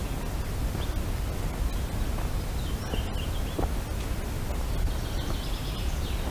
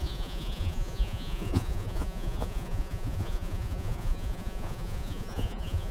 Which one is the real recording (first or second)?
first